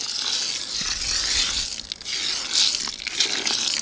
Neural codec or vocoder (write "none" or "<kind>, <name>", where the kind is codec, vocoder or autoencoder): none